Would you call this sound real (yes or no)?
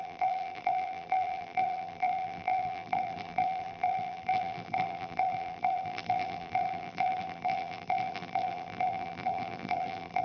no